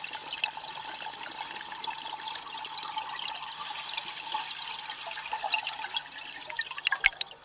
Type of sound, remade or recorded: recorded